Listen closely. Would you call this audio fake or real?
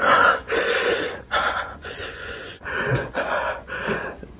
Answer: fake